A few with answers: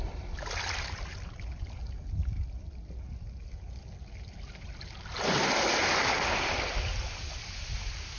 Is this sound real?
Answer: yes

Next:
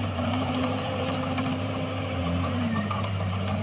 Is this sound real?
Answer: no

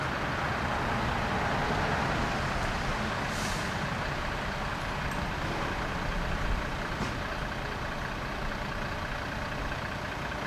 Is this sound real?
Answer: yes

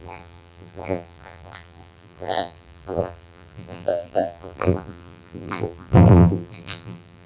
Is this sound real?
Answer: no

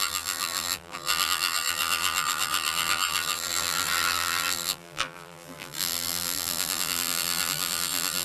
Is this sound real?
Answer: no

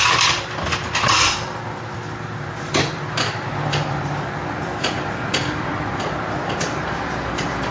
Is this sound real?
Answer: no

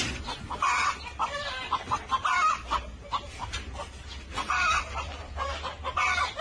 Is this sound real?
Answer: yes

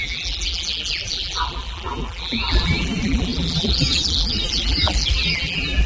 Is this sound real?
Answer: no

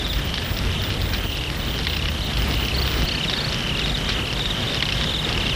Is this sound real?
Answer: yes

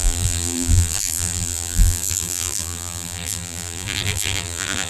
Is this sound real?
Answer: no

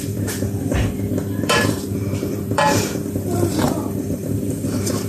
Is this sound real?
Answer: no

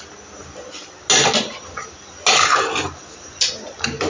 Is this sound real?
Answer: yes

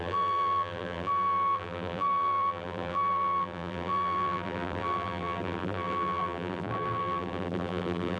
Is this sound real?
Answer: no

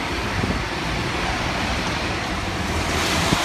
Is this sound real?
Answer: no